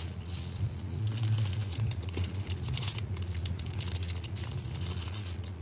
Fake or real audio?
fake